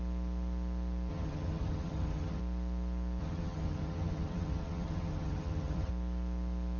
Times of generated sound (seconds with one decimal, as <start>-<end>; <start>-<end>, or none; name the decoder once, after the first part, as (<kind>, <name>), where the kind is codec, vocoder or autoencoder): 1.1-2.4 (vocoder, HiFi-GAN); 3.2-5.9